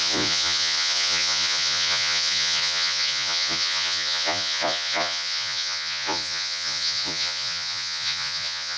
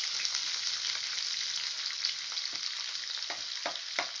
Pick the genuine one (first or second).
second